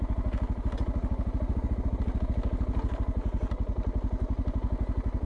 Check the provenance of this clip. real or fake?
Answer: real